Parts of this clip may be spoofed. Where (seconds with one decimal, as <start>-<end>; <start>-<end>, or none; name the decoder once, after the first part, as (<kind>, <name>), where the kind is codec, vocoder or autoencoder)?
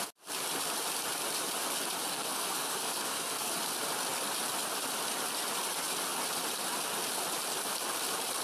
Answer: 2.1-3.5 (codec, SNAC)